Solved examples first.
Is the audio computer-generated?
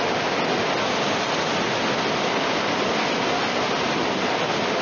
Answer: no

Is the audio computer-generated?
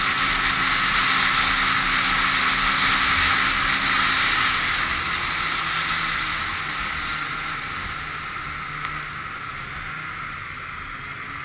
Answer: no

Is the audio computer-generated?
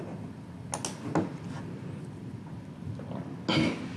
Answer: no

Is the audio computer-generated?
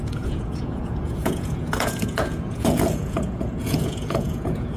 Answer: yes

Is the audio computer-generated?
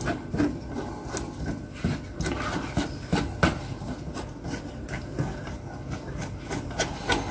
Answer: no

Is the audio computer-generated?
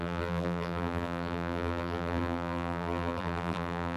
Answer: yes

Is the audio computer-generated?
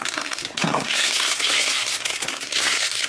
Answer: yes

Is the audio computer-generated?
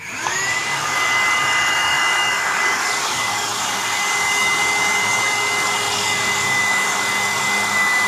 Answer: yes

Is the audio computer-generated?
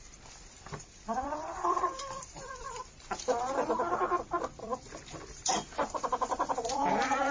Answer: yes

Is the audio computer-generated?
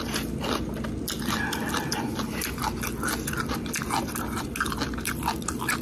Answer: no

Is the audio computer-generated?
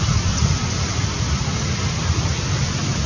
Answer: no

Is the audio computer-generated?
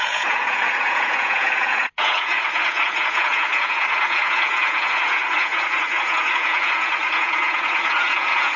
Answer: yes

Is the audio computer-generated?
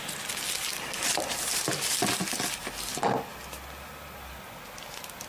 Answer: no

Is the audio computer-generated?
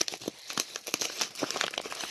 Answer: no